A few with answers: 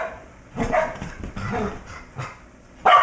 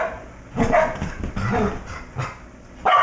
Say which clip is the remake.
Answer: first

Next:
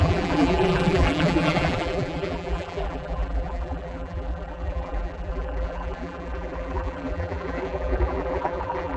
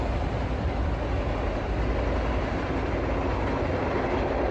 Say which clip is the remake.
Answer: first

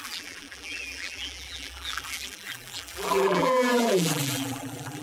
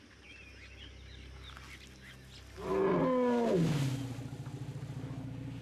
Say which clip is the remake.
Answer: first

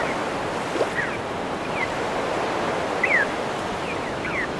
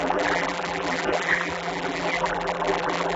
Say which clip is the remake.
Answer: second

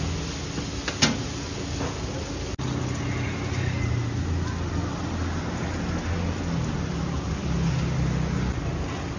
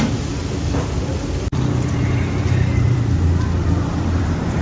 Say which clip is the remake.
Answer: second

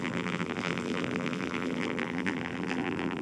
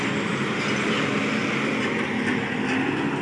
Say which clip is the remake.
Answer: first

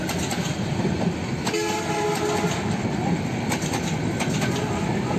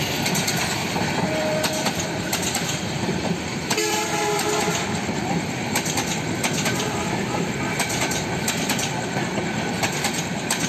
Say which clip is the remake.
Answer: second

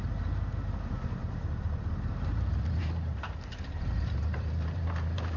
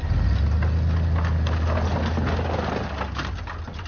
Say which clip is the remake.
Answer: first